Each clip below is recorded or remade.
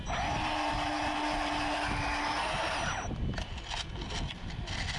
recorded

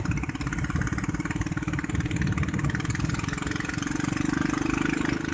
recorded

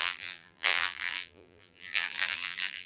remade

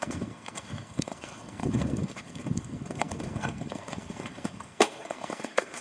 remade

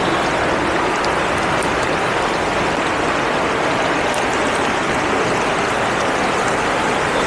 recorded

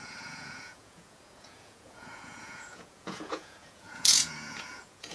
remade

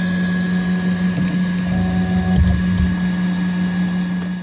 recorded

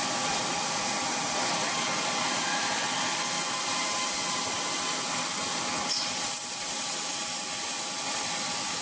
remade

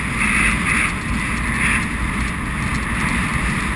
recorded